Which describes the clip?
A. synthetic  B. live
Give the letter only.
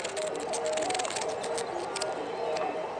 B